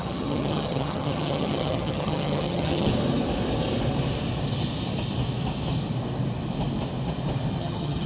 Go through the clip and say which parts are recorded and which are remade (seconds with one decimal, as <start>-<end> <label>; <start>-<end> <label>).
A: 0.0-2.9 remade; 2.9-7.6 recorded; 7.6-8.1 remade